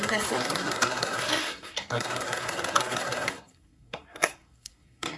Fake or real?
fake